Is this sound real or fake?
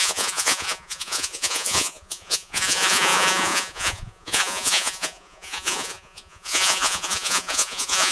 fake